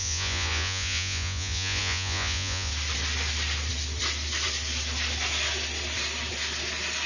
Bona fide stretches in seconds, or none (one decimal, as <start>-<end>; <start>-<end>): 2.7-7.1